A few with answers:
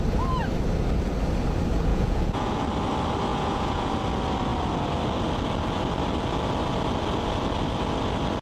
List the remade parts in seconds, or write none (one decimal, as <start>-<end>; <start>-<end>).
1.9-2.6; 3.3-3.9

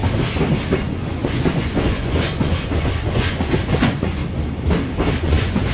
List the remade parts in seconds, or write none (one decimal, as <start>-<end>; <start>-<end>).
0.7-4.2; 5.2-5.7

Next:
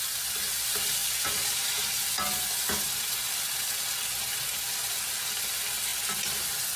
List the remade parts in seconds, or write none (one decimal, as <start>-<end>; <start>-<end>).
none

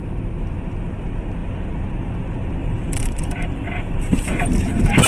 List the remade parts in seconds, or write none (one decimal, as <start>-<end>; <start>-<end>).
2.6-5.1